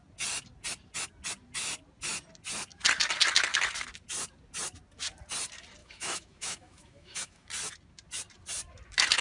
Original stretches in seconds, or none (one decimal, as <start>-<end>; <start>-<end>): 0.0-5.8; 7.5-9.2